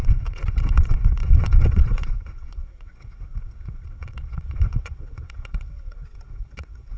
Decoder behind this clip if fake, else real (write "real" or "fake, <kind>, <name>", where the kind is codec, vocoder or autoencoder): fake, vocoder, WaveNeXt